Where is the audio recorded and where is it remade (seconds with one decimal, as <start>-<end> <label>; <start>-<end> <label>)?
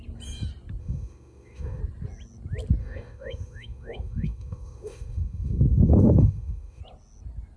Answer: 0.0-0.8 recorded; 0.8-1.8 remade; 1.8-2.8 recorded; 2.8-6.8 remade; 6.8-7.6 recorded